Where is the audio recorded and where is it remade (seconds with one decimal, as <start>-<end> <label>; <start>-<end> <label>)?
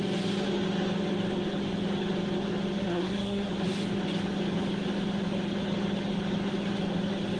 0.0-2.8 recorded; 2.8-3.5 remade; 3.5-7.4 recorded